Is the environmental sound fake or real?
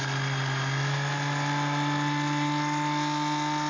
real